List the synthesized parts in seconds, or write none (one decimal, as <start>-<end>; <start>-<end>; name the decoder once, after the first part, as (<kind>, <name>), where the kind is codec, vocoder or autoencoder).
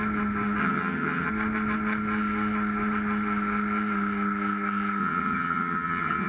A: 0.6-1.3 (vocoder, HiFi-GAN); 5.0-6.3